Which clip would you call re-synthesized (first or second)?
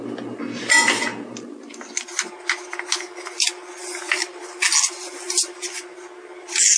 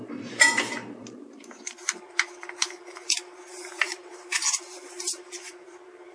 second